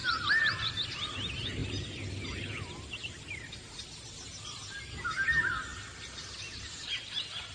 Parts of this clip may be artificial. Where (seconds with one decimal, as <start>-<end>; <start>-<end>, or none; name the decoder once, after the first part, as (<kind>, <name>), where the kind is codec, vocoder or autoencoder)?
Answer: 0.0-0.7 (vocoder, BigVGAN v2)